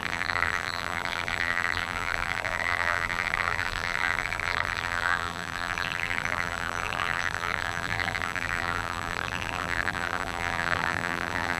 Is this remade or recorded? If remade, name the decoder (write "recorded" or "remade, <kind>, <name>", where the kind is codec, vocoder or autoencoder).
remade, vocoder, BigVGAN v2